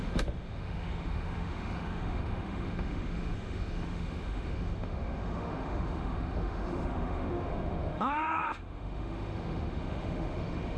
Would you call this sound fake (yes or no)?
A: yes